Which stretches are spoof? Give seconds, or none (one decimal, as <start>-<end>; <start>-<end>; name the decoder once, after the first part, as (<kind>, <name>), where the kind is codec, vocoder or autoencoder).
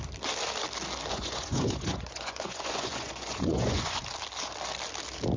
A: 1.1-4.0 (vocoder, Vocos)